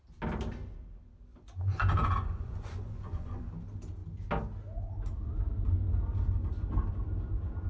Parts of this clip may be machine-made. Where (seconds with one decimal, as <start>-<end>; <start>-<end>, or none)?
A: 1.3-3.5